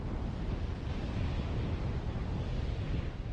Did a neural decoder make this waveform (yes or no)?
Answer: no